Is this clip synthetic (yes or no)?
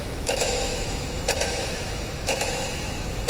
yes